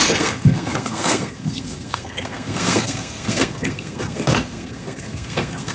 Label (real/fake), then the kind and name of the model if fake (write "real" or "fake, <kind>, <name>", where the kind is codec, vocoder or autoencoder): fake, codec, SNAC